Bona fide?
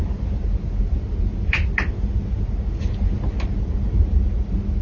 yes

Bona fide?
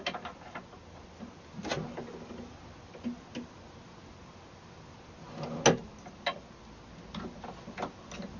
yes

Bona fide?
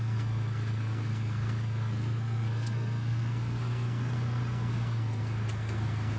no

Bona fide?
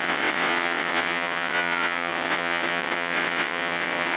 no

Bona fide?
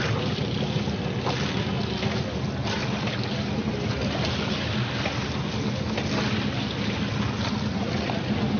yes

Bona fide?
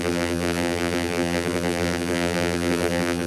no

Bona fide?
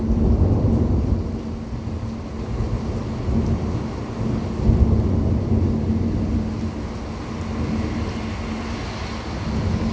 yes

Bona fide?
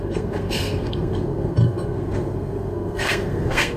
no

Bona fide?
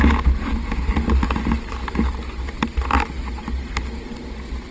yes